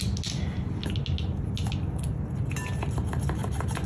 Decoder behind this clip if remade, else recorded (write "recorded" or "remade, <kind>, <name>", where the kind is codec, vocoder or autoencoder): recorded